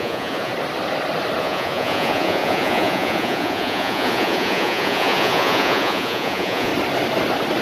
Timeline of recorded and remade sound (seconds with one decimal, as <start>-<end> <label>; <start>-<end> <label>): 0.0-0.5 remade; 0.5-1.4 recorded; 1.4-6.7 remade; 6.7-7.6 recorded